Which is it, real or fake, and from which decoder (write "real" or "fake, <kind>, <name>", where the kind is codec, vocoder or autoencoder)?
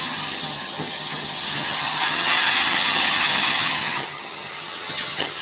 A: fake, vocoder, HiFi-GAN